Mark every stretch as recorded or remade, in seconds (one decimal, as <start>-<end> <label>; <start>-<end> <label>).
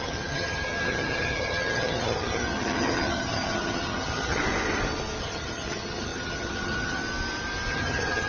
0.0-4.4 remade; 4.4-5.2 recorded; 5.2-7.0 remade; 7.0-7.7 recorded; 7.7-8.3 remade